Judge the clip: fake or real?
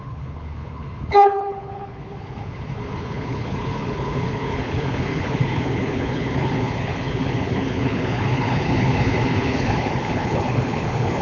fake